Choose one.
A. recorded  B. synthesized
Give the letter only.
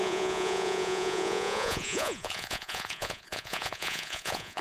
B